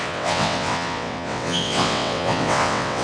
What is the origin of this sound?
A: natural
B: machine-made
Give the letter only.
B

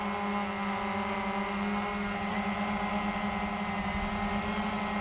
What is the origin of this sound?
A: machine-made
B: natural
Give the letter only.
B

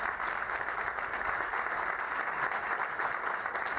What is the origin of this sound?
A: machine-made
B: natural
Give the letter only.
B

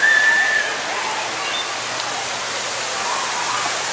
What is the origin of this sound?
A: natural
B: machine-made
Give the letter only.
A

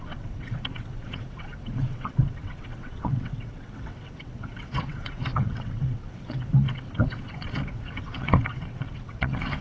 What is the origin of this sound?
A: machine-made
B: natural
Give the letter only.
A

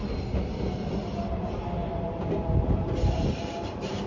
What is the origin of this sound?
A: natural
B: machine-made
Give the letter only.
A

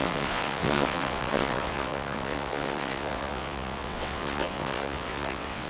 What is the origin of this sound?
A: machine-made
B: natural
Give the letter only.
A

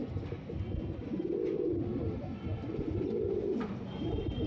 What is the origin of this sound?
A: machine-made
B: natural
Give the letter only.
B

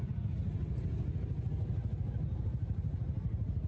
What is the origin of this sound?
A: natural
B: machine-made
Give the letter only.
A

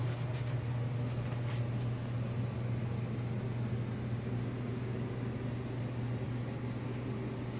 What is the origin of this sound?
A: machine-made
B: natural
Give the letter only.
B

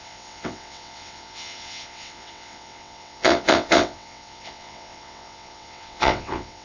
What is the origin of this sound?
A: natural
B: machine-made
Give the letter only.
B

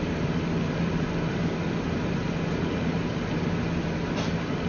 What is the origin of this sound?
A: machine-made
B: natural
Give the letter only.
B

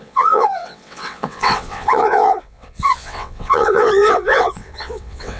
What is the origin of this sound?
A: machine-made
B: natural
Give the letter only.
A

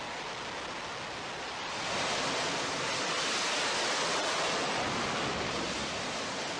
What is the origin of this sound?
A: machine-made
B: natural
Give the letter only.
B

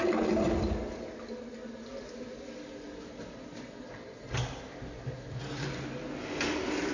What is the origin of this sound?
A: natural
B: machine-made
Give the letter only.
A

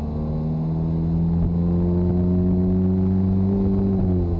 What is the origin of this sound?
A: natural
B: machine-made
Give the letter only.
A